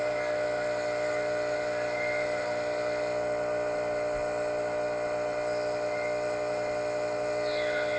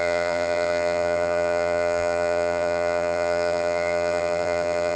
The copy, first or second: second